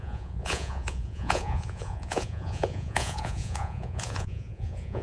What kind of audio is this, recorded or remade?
remade